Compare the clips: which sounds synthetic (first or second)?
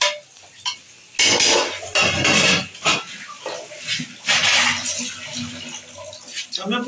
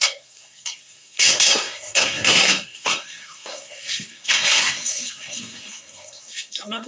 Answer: second